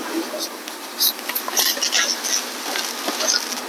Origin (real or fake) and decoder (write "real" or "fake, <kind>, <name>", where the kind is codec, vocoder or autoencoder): real